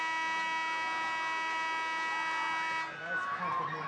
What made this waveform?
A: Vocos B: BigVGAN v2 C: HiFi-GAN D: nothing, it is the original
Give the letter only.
D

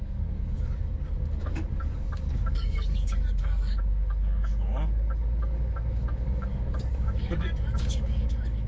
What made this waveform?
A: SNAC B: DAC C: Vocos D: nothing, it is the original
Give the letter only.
B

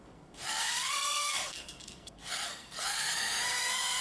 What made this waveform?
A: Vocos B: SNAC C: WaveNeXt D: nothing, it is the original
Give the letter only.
B